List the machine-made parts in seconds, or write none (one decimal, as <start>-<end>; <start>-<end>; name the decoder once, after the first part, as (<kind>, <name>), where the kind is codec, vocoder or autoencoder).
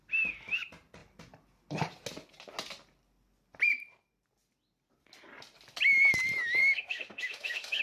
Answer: 6.6-7.8 (autoencoder, DAC-VAE)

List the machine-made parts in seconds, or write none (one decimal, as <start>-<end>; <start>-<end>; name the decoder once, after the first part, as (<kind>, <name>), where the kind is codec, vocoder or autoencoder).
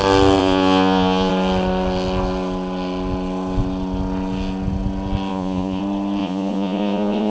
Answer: 0.4-1.3 (vocoder, Vocos); 5.3-5.8; 6.2-7.3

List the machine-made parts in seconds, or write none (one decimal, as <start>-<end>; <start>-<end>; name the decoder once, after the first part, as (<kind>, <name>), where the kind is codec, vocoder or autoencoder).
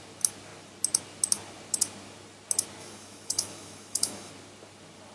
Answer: 2.8-4.3 (autoencoder, DAC-VAE)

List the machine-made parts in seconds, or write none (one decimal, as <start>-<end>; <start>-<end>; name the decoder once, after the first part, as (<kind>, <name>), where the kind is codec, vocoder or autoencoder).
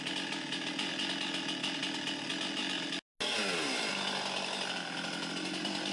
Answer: none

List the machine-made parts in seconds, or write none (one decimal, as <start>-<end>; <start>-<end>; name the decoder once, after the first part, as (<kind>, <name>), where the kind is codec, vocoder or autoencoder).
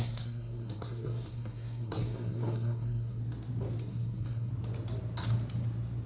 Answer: 0.0-3.2 (codec, SNAC); 3.8-4.5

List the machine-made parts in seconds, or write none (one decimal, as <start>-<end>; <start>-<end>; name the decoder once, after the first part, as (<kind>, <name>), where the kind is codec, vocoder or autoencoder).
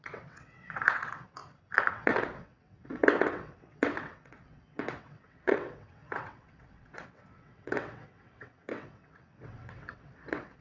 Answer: 0.0-1.4 (vocoder, WaveNeXt); 1.9-10.6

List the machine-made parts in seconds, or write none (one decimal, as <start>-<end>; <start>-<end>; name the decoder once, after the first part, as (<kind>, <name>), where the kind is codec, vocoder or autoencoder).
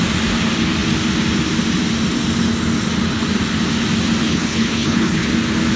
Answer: 4.2-5.3 (codec, HILCodec)